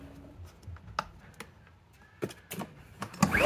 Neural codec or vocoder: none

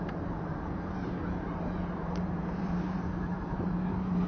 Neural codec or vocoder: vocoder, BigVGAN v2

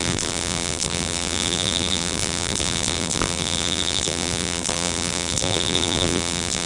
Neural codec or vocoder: vocoder, BigVGAN v2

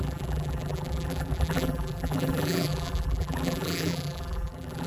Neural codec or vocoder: vocoder, BigVGAN v2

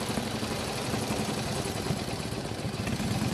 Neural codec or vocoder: vocoder, BigVGAN v2